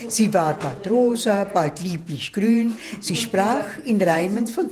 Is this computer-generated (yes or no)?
yes